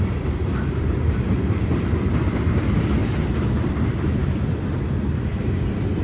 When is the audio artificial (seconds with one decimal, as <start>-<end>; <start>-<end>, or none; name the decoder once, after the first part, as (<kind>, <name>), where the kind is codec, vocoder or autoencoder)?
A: 0.0-3.0 (vocoder, BigVGAN v2); 3.7-6.0